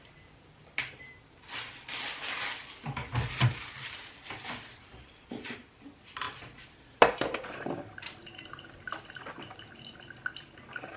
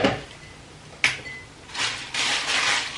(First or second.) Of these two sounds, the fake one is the first